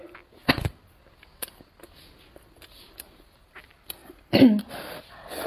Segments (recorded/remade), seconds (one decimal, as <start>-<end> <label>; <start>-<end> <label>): 0.0-5.5 recorded